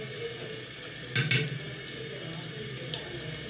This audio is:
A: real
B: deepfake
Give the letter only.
A